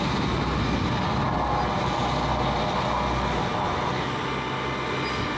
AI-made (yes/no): no